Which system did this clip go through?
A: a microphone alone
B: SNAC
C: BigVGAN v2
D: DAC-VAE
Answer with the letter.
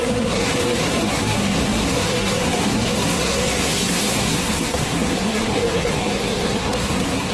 B